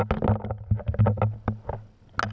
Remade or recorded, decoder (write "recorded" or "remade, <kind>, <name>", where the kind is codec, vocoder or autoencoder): recorded